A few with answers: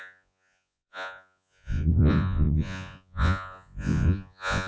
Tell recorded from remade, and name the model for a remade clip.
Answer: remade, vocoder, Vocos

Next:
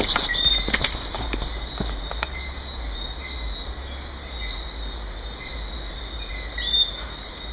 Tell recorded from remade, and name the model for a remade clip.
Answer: recorded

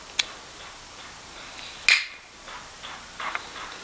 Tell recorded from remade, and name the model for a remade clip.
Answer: recorded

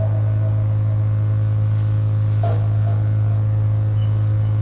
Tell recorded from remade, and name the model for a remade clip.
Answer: recorded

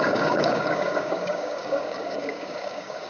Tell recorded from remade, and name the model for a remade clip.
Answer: remade, codec, DAC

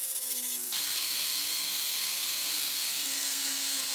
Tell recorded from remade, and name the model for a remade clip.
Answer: remade, codec, SNAC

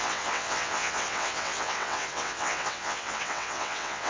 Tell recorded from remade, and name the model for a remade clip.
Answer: remade, vocoder, WaveNeXt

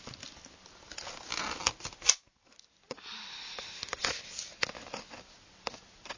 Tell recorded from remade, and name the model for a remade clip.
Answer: recorded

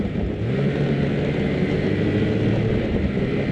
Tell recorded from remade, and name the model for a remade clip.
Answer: recorded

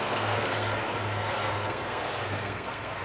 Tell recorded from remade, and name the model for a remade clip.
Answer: remade, codec, SNAC